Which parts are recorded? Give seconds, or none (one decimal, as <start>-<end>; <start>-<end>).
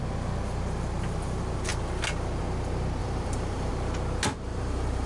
0.0-3.0; 3.7-4.5